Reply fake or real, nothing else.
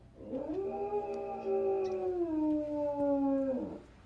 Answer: real